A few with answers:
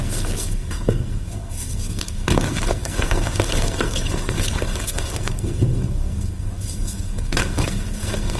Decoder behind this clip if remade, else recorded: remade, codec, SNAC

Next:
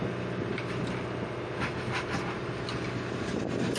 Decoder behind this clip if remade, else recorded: recorded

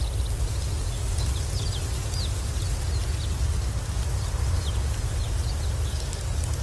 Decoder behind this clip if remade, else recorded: recorded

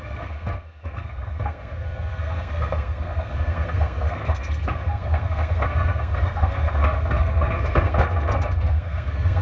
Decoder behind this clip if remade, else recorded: remade, codec, SNAC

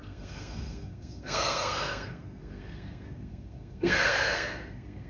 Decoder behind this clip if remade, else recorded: remade, codec, SNAC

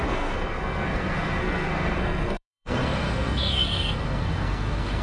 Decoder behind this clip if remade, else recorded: remade, codec, SNAC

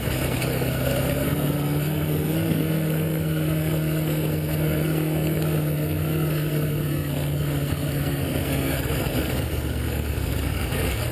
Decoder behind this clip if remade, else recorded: remade, codec, SNAC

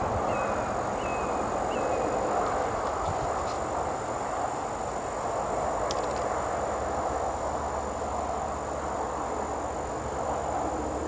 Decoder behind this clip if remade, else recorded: recorded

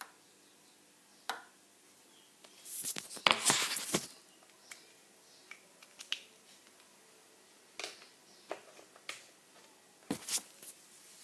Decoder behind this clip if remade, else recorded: recorded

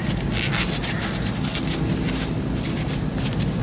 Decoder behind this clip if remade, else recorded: recorded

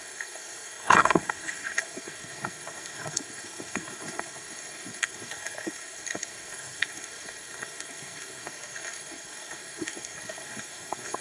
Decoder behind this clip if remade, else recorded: remade, codec, SNAC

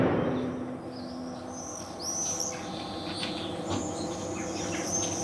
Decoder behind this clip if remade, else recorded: recorded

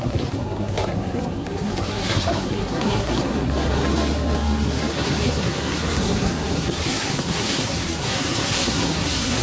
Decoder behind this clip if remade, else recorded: remade, codec, SNAC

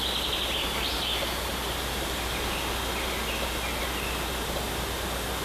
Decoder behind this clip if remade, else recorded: recorded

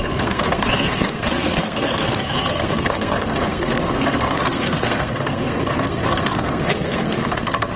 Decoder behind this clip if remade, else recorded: remade, codec, SNAC